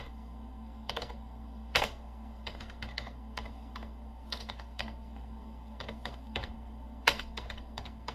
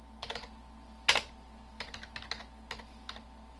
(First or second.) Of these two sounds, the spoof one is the first